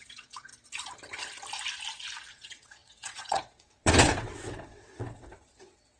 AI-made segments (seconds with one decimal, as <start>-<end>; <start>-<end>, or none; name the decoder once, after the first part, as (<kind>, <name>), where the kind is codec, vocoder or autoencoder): 0.0-0.5 (vocoder, WaveNeXt); 2.3-6.0